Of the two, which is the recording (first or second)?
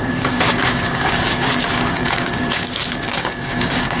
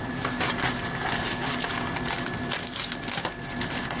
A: second